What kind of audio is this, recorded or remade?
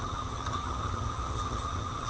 remade